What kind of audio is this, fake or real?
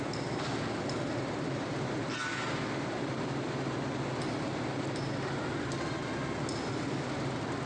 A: real